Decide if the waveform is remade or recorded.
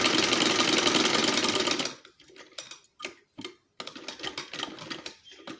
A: recorded